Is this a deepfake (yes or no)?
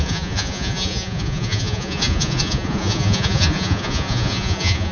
yes